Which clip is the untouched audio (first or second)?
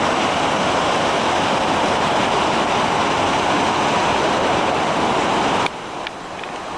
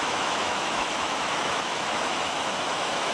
first